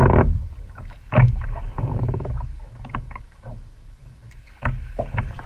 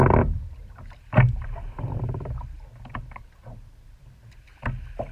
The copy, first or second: first